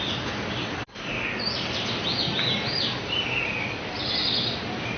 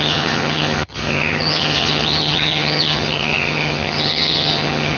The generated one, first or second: second